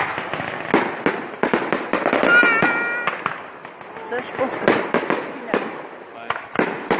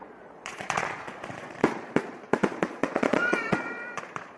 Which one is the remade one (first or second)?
second